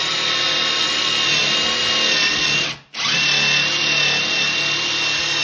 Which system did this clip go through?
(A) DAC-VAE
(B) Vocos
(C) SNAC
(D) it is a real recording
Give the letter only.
D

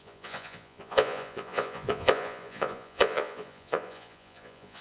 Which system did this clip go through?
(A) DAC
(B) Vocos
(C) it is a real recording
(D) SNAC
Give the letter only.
B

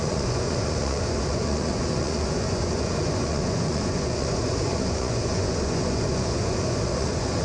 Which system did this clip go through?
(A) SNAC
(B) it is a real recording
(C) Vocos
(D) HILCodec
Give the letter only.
C